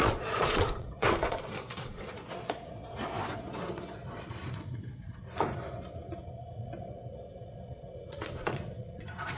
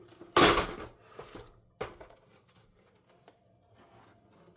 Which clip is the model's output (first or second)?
first